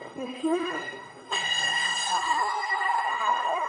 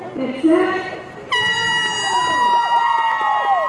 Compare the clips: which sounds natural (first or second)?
second